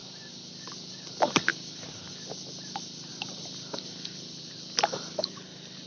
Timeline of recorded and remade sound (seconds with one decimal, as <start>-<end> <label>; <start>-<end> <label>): 0.0-1.5 recorded; 1.5-2.1 remade; 2.1-3.1 recorded; 3.1-4.4 remade; 4.4-5.9 recorded